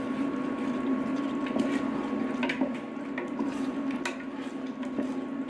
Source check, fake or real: real